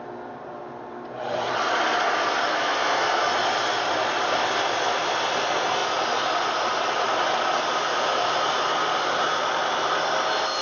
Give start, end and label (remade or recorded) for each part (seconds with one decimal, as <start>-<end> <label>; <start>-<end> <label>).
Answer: 0.0-2.5 recorded; 2.5-3.3 remade; 3.3-10.6 recorded